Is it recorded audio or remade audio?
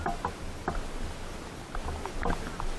recorded